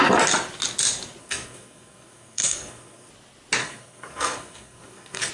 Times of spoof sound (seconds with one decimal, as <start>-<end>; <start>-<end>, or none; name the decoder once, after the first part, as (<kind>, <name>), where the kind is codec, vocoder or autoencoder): 1.2-3.1 (codec, SNAC); 3.6-5.3